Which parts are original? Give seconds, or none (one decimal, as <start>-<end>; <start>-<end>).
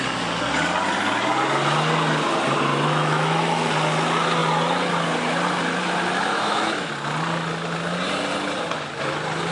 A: 0.0-2.7; 3.7-6.3; 6.9-9.5